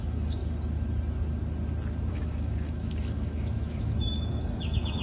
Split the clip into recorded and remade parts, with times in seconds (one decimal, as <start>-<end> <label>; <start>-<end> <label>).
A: 0.0-0.4 remade; 0.4-2.1 recorded; 2.1-5.0 remade